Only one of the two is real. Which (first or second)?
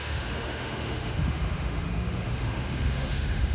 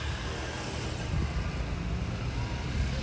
second